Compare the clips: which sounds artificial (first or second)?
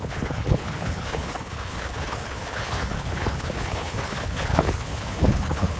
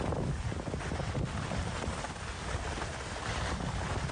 first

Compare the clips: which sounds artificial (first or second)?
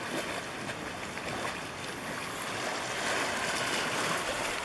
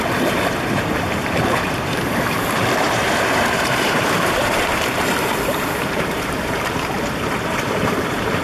second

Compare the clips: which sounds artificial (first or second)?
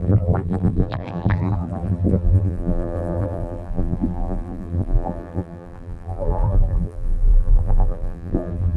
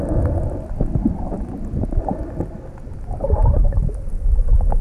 first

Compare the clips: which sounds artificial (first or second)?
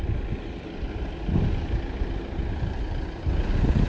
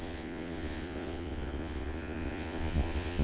second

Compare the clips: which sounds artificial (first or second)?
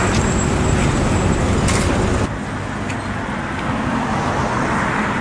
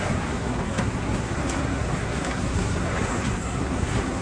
second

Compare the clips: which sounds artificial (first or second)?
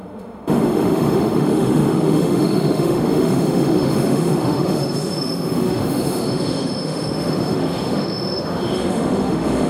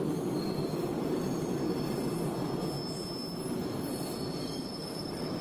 first